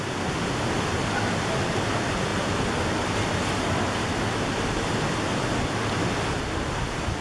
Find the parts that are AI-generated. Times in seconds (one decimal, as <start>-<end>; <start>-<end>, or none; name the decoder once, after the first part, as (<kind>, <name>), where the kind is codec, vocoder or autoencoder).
none